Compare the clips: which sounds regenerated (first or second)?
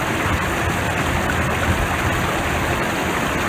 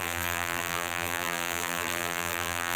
second